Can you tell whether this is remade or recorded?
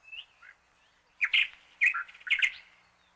recorded